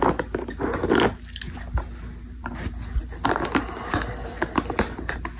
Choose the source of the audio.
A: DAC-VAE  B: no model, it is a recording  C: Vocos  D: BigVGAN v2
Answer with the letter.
B